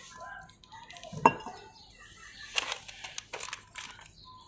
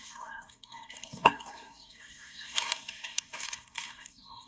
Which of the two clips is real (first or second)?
first